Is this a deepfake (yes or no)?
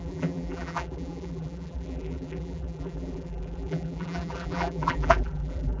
yes